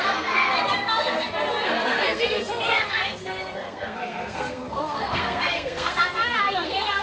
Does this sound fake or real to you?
fake